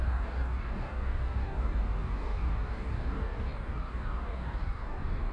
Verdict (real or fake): fake